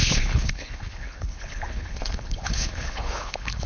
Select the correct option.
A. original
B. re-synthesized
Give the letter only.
B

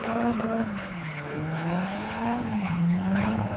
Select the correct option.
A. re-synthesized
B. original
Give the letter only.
A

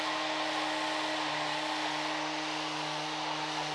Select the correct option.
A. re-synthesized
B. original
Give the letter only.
B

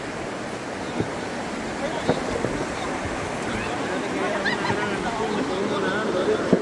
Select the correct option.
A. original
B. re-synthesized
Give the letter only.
A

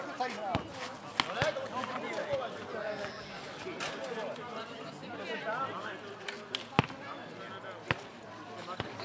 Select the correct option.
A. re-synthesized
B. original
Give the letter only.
B